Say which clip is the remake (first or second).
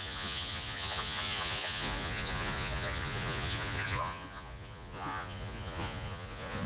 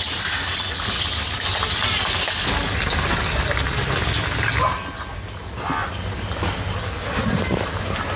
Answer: first